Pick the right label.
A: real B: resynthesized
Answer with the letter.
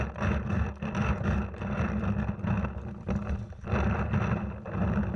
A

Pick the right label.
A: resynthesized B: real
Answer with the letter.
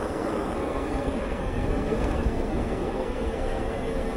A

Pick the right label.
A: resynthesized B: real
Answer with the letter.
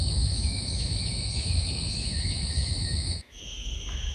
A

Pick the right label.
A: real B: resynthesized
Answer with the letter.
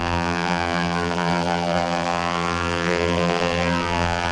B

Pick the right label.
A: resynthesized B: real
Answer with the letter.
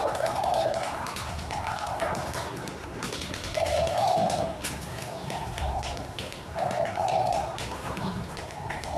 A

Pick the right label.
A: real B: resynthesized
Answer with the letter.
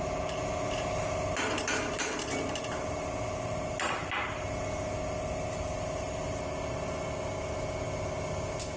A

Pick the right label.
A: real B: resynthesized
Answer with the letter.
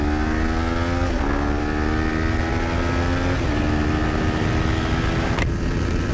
A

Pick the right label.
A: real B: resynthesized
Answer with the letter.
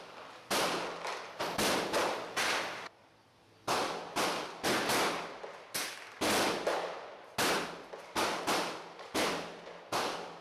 A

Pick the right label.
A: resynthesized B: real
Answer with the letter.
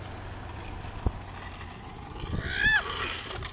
B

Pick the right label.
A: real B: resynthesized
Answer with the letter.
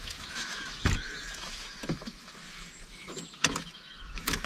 B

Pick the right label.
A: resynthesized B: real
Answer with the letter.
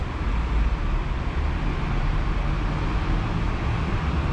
B